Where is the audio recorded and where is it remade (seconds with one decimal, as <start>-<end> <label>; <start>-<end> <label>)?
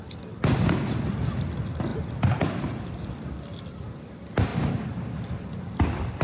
0.0-6.2 recorded